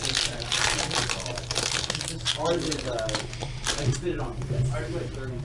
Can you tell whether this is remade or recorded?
recorded